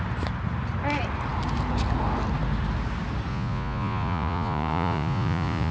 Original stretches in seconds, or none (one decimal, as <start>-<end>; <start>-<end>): 0.0-3.3